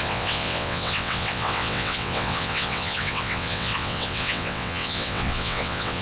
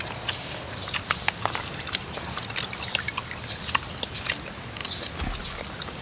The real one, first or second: second